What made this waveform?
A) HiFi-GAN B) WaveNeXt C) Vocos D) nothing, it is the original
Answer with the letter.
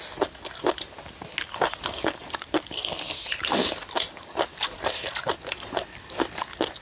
D